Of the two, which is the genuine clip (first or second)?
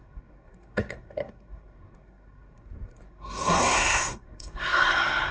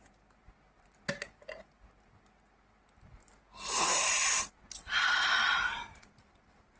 second